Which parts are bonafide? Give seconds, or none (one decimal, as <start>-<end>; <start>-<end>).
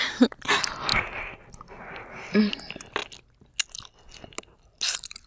0.0-5.3